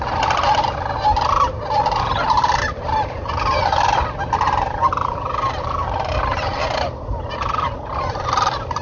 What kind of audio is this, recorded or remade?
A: remade